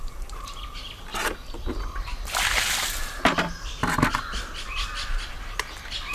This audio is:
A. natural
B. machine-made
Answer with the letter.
A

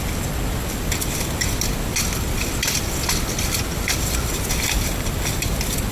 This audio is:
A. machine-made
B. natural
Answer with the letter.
B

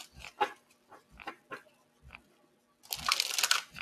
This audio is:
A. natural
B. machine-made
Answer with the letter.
A